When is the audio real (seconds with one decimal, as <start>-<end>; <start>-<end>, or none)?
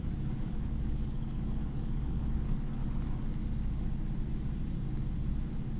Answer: 2.8-5.8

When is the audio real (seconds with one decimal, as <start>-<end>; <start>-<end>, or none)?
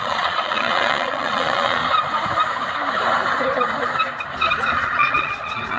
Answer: 1.8-4.7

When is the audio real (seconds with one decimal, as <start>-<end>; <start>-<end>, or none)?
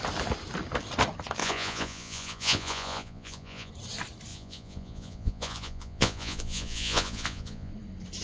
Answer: 0.0-1.4; 3.7-4.3; 7.7-8.2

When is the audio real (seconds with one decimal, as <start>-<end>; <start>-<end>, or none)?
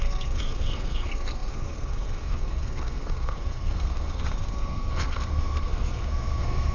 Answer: none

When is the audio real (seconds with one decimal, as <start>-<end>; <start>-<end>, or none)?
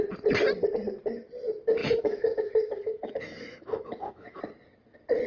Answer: 0.0-1.8; 4.4-5.3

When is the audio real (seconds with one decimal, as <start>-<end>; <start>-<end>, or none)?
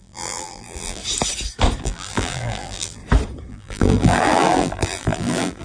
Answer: 1.0-1.8; 3.0-3.5